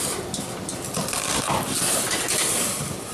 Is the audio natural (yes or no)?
yes